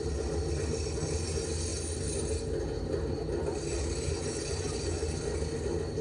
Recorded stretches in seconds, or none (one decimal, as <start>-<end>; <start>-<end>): 0.0-6.0